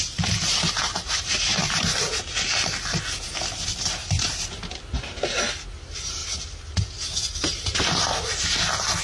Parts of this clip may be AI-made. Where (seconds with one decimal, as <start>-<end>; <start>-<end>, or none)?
0.8-1.9; 4.0-4.7